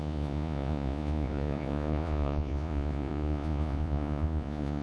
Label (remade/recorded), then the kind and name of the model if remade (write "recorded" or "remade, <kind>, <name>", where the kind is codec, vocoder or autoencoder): remade, vocoder, Vocos